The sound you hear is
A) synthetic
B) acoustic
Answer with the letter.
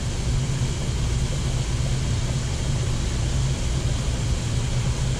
B